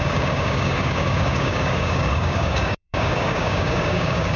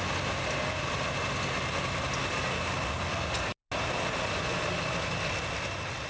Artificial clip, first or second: first